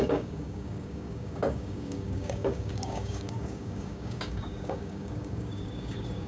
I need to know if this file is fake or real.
fake